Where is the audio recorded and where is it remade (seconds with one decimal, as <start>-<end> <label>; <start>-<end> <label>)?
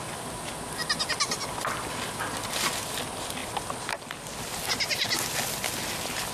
0.0-6.3 recorded